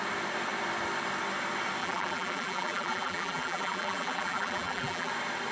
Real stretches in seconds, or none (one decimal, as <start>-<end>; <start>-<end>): 0.0-1.8; 5.1-5.5